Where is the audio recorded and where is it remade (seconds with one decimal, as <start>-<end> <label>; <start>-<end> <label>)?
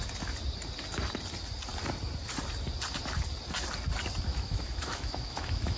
0.0-4.3 recorded; 4.3-5.8 remade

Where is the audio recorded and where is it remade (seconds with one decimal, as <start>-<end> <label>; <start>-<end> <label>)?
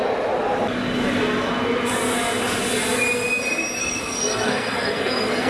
0.0-3.8 recorded; 3.8-5.5 remade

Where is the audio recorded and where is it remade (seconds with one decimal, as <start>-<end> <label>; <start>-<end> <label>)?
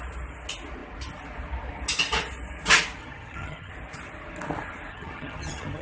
0.0-3.0 recorded; 3.0-3.7 remade; 3.7-4.9 recorded; 4.9-5.8 remade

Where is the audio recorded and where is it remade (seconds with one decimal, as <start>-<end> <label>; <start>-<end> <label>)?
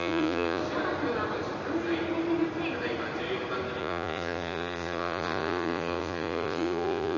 0.0-0.6 remade; 0.6-3.8 recorded; 3.8-7.2 remade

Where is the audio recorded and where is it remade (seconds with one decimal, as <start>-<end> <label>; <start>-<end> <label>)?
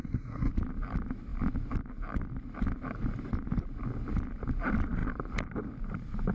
0.0-0.5 remade; 0.5-6.3 recorded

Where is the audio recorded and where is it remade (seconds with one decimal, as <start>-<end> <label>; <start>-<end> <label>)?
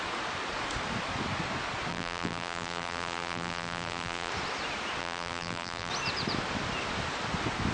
0.0-1.9 recorded; 1.9-4.3 remade; 4.3-5.0 recorded; 5.0-5.9 remade; 5.9-7.7 recorded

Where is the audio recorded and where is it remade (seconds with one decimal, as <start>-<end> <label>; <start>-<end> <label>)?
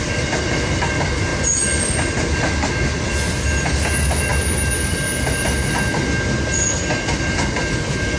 0.0-8.2 recorded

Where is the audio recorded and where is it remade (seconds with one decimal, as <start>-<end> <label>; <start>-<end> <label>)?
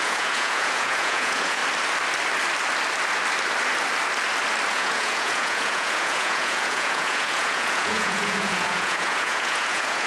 0.0-1.6 remade; 1.6-4.7 recorded; 4.7-10.1 remade